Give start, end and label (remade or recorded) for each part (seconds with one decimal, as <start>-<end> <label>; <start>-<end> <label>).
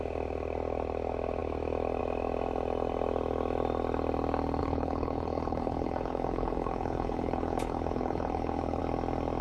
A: 0.0-4.6 recorded; 4.6-8.8 remade; 8.8-9.4 recorded